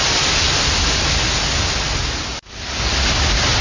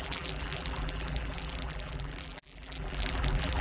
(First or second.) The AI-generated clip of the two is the second